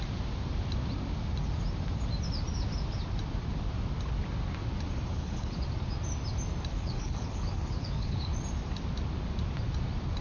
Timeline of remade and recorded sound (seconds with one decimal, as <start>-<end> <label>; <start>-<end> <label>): 0.0-5.1 recorded; 5.1-5.6 remade; 5.6-6.7 recorded; 6.7-8.3 remade; 8.3-10.2 recorded